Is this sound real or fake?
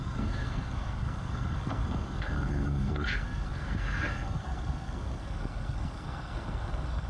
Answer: fake